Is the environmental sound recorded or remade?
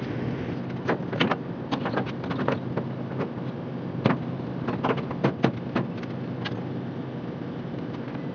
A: recorded